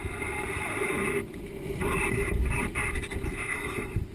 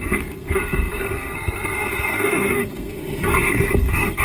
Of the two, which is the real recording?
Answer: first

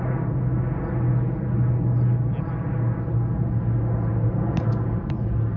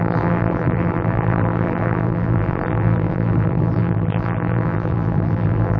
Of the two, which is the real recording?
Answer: first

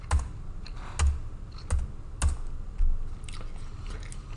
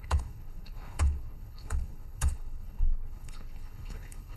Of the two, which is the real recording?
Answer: first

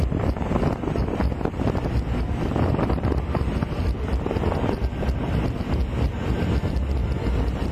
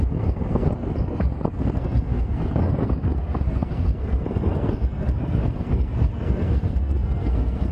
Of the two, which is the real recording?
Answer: first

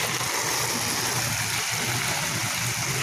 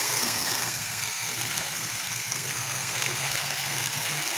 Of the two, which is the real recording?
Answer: first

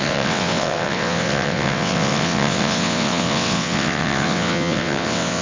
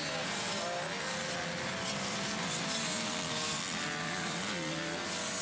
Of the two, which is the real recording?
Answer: second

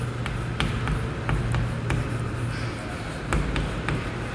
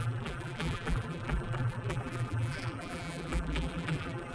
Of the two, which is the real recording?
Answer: first